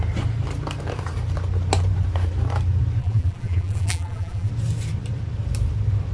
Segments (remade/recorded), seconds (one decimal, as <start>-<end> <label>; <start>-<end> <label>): 0.0-3.0 recorded; 3.0-4.5 remade; 4.5-6.1 recorded